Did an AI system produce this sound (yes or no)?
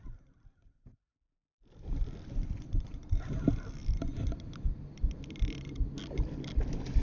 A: no